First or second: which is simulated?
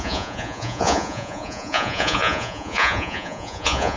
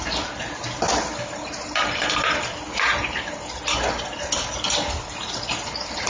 first